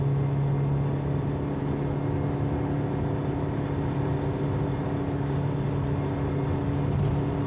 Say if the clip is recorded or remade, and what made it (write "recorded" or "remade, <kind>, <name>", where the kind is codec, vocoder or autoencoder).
recorded